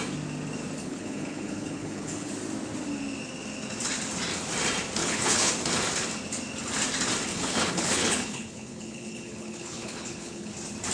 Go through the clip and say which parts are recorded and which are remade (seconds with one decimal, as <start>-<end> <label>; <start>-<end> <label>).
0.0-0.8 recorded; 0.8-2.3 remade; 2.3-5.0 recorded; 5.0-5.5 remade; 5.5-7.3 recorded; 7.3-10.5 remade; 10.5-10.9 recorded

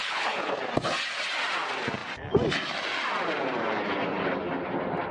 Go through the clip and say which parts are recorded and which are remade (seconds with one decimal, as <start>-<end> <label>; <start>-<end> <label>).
0.0-0.6 remade; 0.6-5.1 recorded

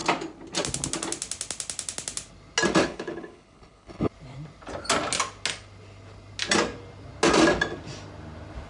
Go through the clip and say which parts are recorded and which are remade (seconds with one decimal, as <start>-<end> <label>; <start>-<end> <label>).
0.0-2.8 recorded; 2.8-4.1 remade; 4.1-8.7 recorded

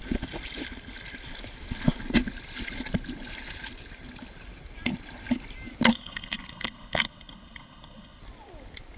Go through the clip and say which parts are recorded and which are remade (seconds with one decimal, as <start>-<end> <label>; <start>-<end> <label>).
0.0-5.9 recorded; 5.9-8.2 remade; 8.2-9.0 recorded

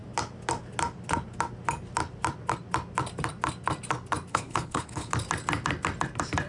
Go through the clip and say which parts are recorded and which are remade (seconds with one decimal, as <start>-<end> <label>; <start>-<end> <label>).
0.0-4.3 recorded; 4.3-5.1 remade; 5.1-6.5 recorded

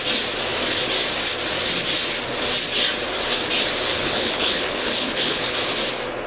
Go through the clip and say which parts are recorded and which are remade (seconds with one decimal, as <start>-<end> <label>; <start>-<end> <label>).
0.0-3.9 recorded; 3.9-5.4 remade; 5.4-6.3 recorded

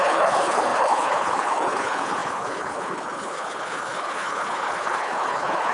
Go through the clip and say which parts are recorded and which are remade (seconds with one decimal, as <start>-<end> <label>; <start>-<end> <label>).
0.0-5.7 remade

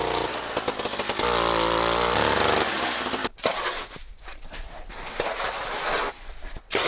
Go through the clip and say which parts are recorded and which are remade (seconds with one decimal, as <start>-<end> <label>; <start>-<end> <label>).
0.0-6.9 recorded